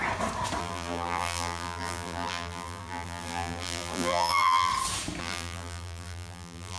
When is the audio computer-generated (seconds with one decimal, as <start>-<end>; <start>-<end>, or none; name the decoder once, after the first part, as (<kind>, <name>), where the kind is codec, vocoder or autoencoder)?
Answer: 0.6-4.7 (vocoder, BigVGAN v2); 5.2-6.8